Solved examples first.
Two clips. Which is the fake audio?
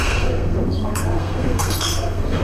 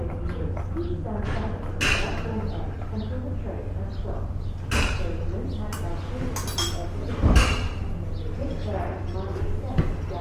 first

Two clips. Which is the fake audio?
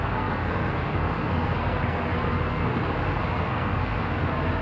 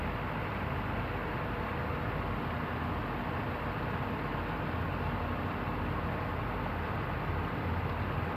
first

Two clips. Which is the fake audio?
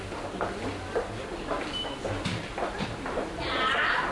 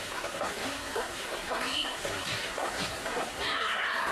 second